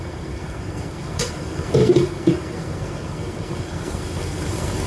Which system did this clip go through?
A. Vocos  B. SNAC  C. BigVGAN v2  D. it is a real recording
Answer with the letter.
B